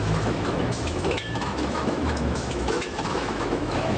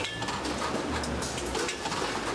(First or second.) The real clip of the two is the second